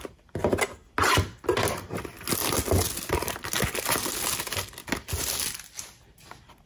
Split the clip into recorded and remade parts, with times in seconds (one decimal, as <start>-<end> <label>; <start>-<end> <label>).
0.0-6.7 recorded